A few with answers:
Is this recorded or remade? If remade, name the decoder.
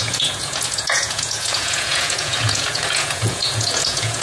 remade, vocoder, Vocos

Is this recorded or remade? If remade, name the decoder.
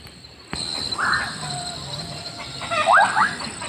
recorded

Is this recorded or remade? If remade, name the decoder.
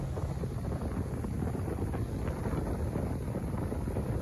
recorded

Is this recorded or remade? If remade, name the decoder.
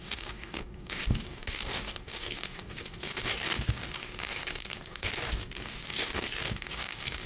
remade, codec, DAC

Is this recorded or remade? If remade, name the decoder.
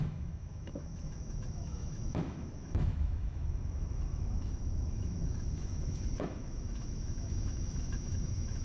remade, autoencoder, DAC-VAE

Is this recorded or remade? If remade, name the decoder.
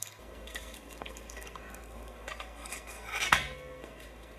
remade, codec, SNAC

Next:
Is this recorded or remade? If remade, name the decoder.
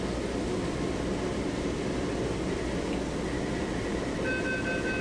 recorded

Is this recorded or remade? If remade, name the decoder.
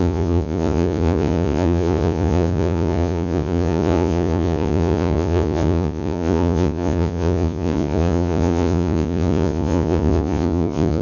remade, vocoder, Vocos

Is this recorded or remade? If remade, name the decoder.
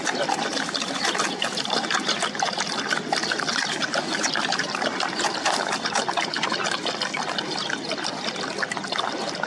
recorded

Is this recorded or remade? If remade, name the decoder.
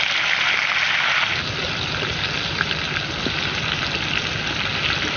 recorded